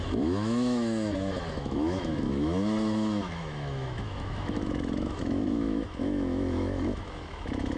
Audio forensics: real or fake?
fake